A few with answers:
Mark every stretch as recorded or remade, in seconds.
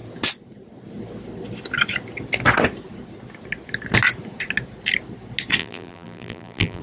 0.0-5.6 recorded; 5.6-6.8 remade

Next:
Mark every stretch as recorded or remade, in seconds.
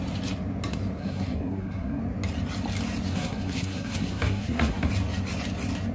0.0-1.0 recorded; 1.0-2.0 remade; 2.0-3.1 recorded; 3.1-4.9 remade; 4.9-5.9 recorded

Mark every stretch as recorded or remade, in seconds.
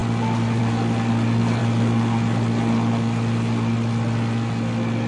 0.0-5.1 recorded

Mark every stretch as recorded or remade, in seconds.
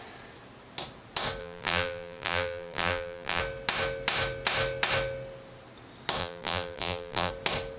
0.0-1.4 recorded; 1.4-3.4 remade; 3.4-6.2 recorded; 6.2-7.3 remade; 7.3-7.8 recorded